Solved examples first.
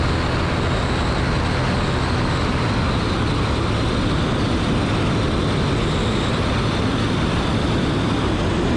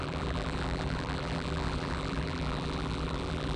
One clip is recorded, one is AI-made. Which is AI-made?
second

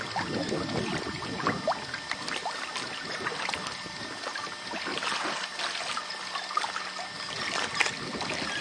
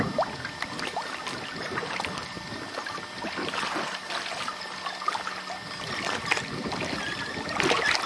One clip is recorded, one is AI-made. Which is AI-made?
second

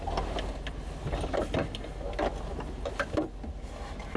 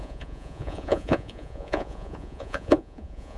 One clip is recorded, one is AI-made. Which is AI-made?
second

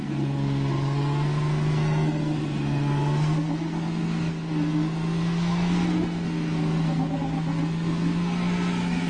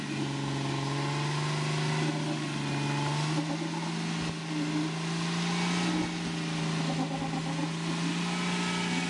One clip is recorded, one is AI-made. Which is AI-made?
first